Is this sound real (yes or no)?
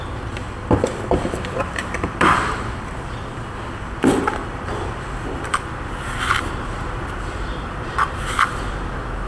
no